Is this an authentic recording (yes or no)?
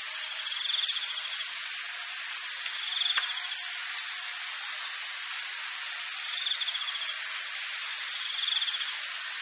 yes